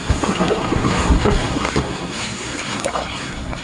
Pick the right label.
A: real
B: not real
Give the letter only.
B